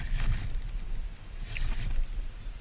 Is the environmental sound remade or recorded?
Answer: recorded